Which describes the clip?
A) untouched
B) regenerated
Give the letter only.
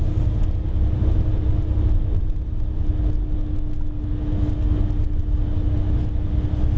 A